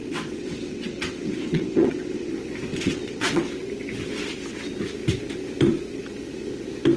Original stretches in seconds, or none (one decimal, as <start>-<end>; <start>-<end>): 2.3-2.7; 3.5-7.0